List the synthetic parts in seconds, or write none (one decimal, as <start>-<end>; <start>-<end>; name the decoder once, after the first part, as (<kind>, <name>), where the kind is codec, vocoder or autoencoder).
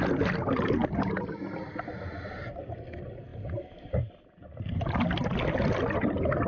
none